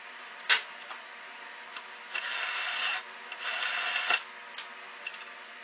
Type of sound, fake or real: real